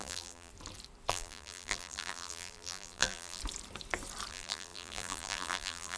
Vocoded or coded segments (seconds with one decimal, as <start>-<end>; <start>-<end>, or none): 0.0-0.5; 1.1-3.4; 4.3-6.0